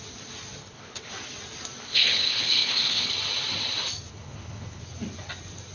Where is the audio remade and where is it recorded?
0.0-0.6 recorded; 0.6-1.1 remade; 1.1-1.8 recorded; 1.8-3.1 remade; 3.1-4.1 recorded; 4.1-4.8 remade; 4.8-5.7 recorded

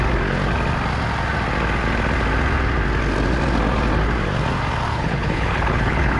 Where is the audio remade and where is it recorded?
0.0-4.9 recorded; 4.9-6.2 remade